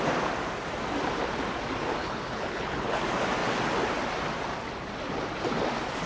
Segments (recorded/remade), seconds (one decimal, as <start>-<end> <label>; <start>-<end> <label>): 0.0-2.0 recorded; 2.0-3.0 remade; 3.0-6.1 recorded

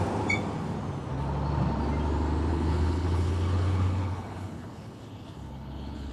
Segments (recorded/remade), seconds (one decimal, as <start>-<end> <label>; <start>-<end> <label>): 0.0-2.5 recorded; 2.5-6.1 remade